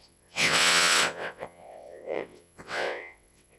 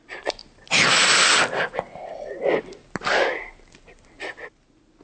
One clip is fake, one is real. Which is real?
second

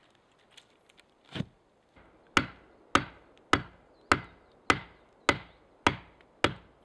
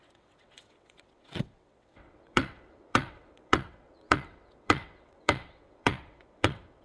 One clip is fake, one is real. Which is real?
first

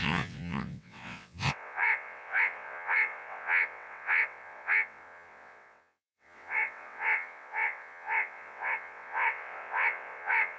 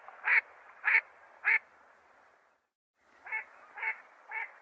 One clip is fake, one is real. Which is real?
second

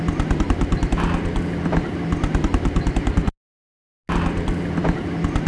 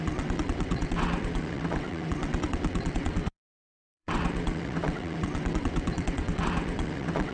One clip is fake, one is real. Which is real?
first